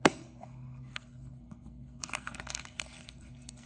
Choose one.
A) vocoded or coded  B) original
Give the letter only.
A